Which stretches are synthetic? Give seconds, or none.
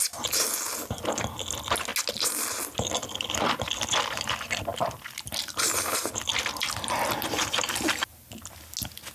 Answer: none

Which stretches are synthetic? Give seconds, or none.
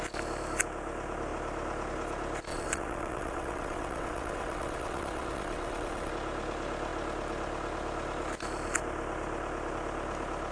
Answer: 2.5-6.1 (vocoder, WaveNeXt)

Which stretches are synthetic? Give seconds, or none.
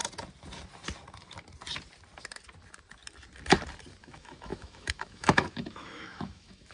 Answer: 4.0-6.7 (autoencoder, DAC-VAE)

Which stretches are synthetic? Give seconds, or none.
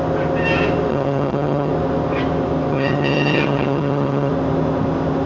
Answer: 0.9-1.7 (vocoder, HiFi-GAN); 2.7-4.3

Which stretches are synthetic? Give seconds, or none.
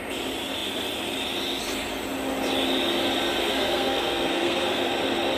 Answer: 3.4-4.9 (codec, SNAC)